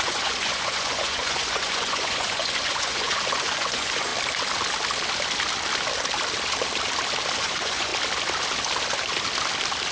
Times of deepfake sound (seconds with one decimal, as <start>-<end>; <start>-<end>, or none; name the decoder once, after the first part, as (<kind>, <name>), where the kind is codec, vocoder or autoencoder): 0.0-4.1 (vocoder, Vocos); 7.4-7.9